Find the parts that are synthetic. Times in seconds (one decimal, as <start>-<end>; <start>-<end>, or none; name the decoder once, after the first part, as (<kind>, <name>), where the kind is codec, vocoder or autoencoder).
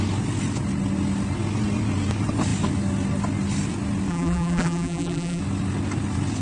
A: 4.1-5.4 (vocoder, BigVGAN v2)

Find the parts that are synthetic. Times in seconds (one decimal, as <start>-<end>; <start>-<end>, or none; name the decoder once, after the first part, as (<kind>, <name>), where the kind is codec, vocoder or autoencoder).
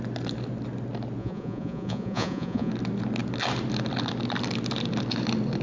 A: 1.2-2.7 (vocoder, Vocos)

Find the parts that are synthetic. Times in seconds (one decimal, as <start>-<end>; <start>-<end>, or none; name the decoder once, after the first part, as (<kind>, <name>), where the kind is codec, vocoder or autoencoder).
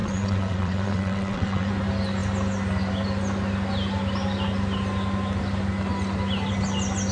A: 0.0-1.7 (vocoder, WaveNeXt)